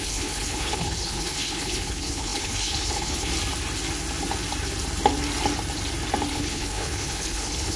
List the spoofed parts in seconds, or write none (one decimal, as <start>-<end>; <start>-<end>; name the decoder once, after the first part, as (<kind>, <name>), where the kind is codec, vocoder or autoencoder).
0.0-3.3 (codec, HILCodec); 6.3-7.8